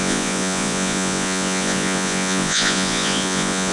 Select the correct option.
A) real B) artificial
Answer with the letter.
B